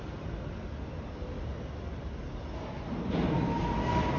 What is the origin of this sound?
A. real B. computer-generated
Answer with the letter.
A